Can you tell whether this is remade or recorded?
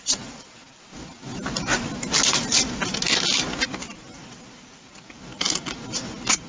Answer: recorded